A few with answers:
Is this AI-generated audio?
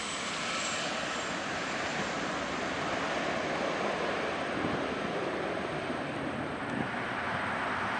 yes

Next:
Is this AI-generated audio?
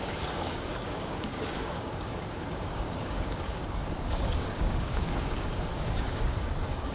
yes